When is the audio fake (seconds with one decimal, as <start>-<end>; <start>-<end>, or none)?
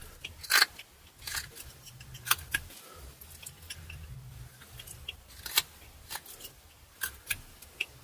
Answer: none